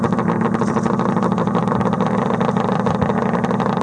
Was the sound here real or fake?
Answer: fake